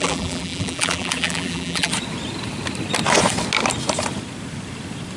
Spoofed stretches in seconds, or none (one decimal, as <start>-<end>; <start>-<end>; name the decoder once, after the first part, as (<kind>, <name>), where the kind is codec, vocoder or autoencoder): 0.0-1.9 (vocoder, BigVGAN v2)